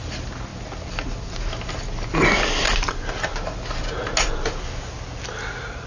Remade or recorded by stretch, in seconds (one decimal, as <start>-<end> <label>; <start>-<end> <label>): 0.0-5.9 recorded